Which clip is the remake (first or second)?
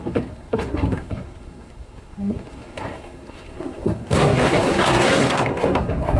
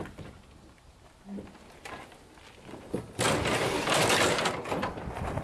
first